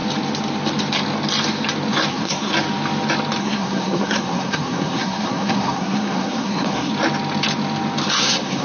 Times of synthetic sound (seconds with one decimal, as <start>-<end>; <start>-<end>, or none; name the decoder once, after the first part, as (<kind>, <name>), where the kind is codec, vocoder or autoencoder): 2.1-2.5 (codec, SNAC); 3.4-6.9; 8.2-8.6